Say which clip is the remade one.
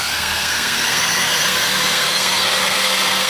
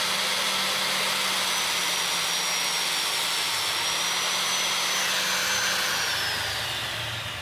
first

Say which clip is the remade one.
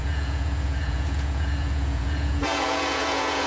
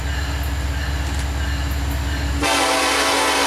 first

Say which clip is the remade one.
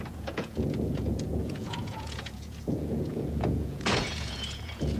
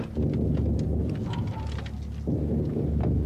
first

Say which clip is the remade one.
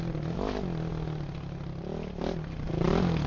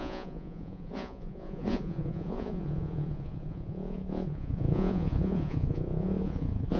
second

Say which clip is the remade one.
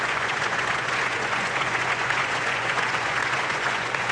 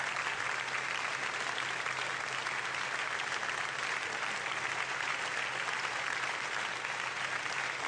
first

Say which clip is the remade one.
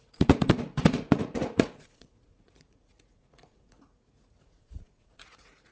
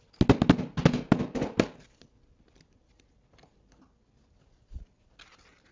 first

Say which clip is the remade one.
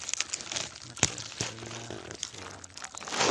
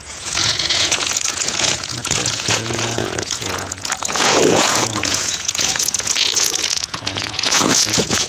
second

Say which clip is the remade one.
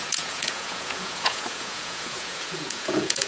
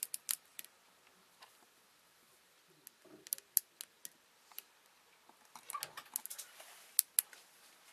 first